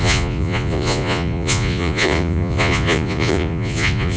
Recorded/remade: remade